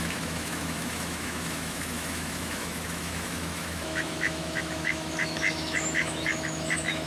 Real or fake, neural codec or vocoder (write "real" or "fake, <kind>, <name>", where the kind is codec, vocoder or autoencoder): fake, autoencoder, DAC-VAE